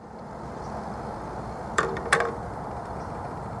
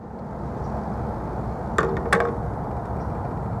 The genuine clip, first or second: second